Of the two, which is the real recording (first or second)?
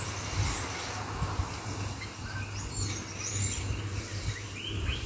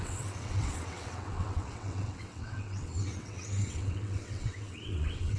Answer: first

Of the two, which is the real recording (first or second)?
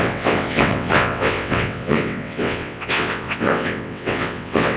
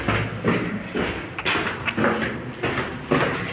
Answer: second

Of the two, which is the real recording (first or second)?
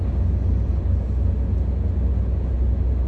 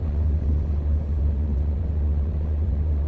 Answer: first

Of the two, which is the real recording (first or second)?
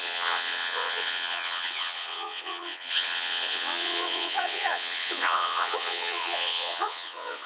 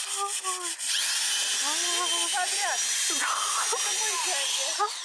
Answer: second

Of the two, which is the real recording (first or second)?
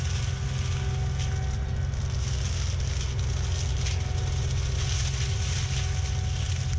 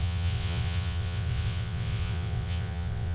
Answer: first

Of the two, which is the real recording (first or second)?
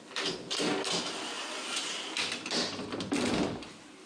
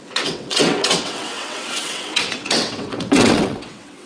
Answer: first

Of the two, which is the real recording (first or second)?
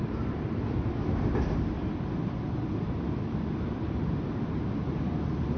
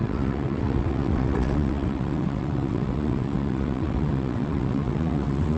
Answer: first